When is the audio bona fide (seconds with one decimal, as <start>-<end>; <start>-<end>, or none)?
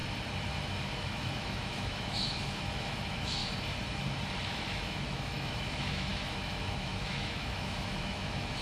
0.0-1.0; 3.4-4.4